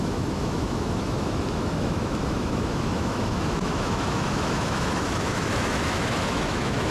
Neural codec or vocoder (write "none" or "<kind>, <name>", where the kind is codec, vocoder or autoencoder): autoencoder, DAC-VAE